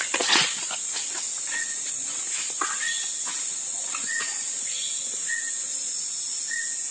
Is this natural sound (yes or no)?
no